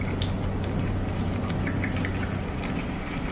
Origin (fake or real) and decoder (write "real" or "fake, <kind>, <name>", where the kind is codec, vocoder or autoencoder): real